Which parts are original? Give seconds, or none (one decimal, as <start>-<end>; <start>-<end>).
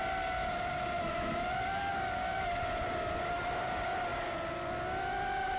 0.0-1.8; 2.4-5.6